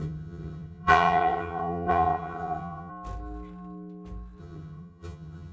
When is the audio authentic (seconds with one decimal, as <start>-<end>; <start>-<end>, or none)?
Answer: 2.9-4.4